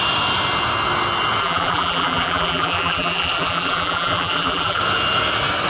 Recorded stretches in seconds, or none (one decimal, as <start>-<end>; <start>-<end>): 0.0-1.4; 4.8-5.7